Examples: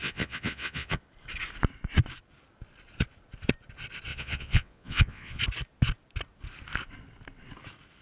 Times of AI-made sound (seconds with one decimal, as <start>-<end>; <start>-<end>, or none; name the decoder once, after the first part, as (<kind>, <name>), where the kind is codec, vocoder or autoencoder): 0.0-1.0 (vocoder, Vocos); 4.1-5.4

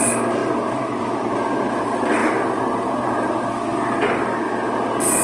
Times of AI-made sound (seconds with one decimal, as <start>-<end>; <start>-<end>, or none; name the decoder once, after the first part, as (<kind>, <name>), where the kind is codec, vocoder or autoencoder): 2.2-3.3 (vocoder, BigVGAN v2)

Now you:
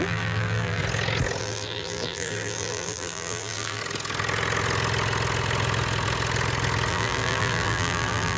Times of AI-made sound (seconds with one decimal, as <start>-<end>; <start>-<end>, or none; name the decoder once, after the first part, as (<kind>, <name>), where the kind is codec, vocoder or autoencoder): 0.0-0.8 (vocoder, BigVGAN v2); 1.4-3.8; 6.9-8.4

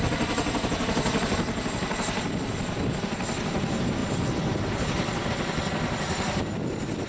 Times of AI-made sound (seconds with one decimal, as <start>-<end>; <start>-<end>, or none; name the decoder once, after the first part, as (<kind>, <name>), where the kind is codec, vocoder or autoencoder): none

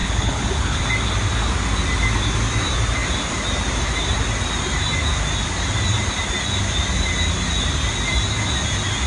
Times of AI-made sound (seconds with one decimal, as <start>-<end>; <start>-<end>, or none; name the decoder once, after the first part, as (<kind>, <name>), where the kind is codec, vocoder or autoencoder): 0.0-0.8 (codec, HILCodec)

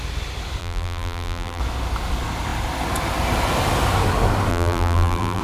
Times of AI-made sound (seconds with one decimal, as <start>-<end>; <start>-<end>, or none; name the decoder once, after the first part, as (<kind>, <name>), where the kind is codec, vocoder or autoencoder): 0.6-1.6 (vocoder, BigVGAN v2); 4.5-5.4

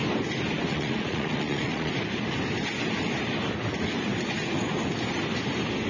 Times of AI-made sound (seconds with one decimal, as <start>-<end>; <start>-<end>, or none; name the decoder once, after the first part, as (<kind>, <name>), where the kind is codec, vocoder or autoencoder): 0.7-1.9 (vocoder, Vocos)

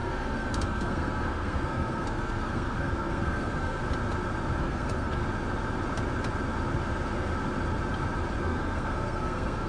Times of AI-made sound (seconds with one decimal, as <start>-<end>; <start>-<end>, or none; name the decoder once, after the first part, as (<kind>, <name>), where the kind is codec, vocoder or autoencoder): 0.0-3.8 (codec, SNAC); 4.6-5.2; 8.4-9.7